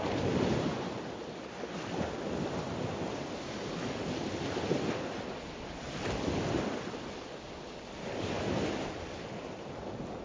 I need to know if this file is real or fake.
real